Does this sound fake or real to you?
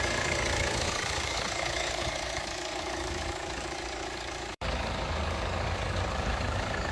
fake